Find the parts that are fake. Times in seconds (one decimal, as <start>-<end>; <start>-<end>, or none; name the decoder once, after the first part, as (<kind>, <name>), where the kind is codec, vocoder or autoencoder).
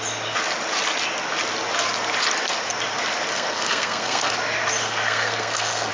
3.3-4.3 (codec, SNAC); 4.8-5.9